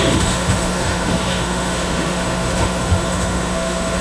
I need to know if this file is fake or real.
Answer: fake